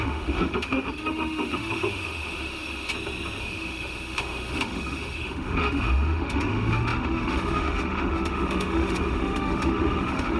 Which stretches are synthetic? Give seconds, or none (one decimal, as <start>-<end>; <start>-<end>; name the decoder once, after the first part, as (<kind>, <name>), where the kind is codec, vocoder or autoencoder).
0.0-2.9 (autoencoder, DAC-VAE); 3.4-10.4